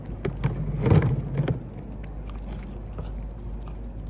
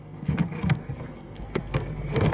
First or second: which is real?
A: first